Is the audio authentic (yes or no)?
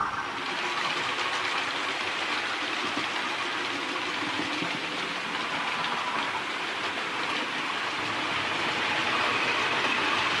yes